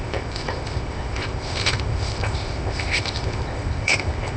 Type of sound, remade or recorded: remade